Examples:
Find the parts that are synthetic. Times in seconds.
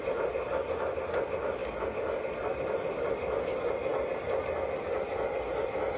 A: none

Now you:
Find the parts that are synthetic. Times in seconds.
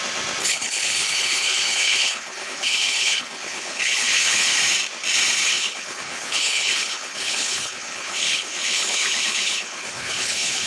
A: 0.4-4.6 (codec, HILCodec); 5.4-10.7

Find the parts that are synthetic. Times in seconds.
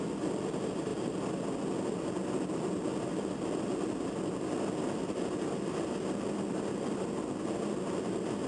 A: none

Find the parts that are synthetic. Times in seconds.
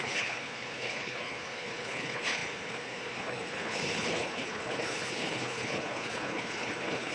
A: 0.0-7.1 (codec, HILCodec)